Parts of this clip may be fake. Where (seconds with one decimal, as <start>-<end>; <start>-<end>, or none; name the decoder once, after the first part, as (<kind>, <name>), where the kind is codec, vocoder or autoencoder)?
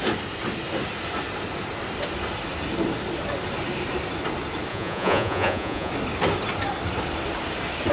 4.7-5.9 (vocoder, Vocos)